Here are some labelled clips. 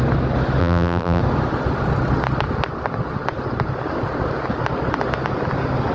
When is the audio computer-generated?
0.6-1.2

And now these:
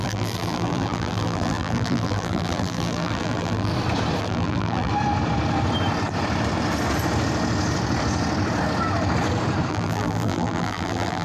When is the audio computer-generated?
0.0-3.7; 4.2-4.9; 9.7-11.2

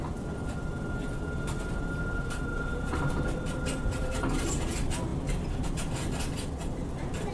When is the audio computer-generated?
2.5-3.1

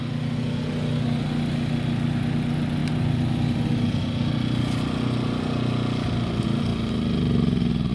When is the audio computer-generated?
none

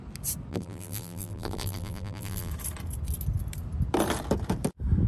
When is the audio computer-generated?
0.5-2.5

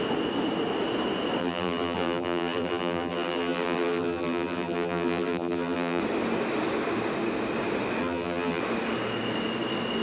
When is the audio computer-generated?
1.4-6.0; 8.0-8.6

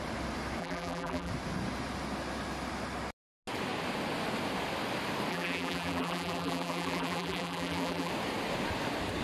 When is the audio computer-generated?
0.6-1.3; 5.3-8.1